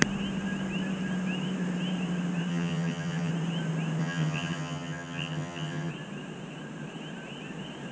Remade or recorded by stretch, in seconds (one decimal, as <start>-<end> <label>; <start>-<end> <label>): 0.0-2.5 recorded; 2.5-3.3 remade; 3.3-4.0 recorded; 4.0-5.9 remade; 5.9-7.9 recorded

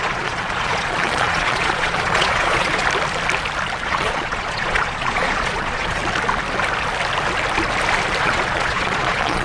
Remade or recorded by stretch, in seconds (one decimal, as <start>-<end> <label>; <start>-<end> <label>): 0.0-2.8 remade; 2.8-3.8 recorded; 3.8-6.0 remade; 6.0-8.2 recorded; 8.2-9.4 remade

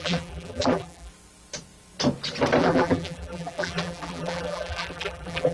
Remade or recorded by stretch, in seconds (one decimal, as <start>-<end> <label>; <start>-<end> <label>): 0.0-1.1 remade; 1.1-2.6 recorded; 2.6-5.5 remade

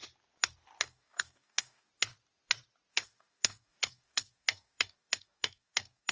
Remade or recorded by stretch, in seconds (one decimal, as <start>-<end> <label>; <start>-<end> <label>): 0.0-0.8 recorded; 0.8-1.9 remade; 1.9-2.9 recorded; 2.9-6.1 remade

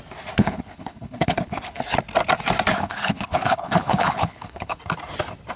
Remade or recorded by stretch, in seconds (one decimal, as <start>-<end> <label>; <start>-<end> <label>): 0.0-0.4 recorded; 0.4-1.8 remade; 1.8-2.7 recorded; 2.7-4.8 remade; 4.8-5.6 recorded